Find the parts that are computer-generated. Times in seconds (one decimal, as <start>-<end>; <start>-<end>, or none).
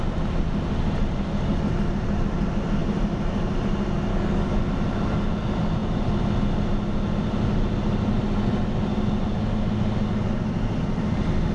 4.1-4.7